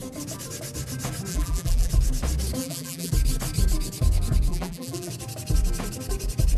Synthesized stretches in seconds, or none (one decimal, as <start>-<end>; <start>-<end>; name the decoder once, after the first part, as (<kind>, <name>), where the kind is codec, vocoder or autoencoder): 1.3-1.9 (vocoder, BigVGAN v2); 2.6-3.1; 4.5-5.1